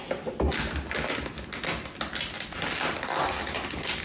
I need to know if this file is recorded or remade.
recorded